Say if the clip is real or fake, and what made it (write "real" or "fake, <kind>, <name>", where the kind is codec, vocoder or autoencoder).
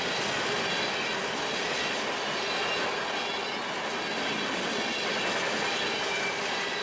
real